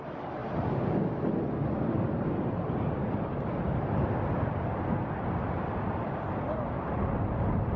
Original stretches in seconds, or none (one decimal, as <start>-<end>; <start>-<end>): 0.0-7.8